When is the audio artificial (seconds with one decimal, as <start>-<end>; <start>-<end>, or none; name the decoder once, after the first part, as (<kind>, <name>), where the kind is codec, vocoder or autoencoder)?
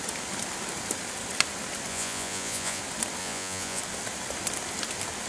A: 1.9-2.8 (vocoder, Vocos); 3.2-3.8